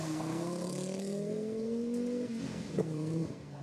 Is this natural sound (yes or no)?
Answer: no